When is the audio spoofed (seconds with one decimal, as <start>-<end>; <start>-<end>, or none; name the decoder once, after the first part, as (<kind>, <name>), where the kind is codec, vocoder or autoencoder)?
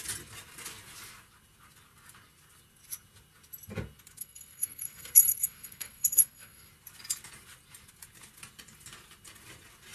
4.2-6.7 (codec, SNAC)